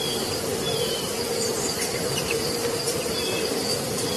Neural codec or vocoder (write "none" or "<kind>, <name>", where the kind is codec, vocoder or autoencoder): none